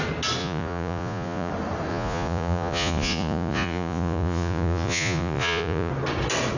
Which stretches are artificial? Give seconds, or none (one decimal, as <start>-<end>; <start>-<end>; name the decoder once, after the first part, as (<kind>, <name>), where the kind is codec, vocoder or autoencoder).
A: 0.4-1.5 (vocoder, Vocos); 1.9-5.9